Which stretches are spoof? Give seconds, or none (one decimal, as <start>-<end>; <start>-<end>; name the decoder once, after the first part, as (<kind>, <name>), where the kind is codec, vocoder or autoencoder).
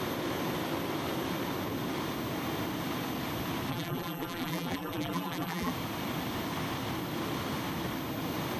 3.7-5.7 (vocoder, BigVGAN v2)